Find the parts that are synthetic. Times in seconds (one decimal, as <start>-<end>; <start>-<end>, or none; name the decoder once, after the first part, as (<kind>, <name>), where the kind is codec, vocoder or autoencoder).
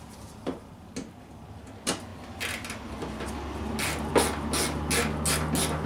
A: none